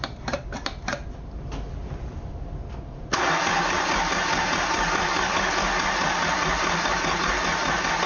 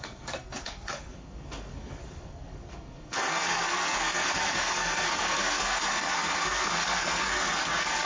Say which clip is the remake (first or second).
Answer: second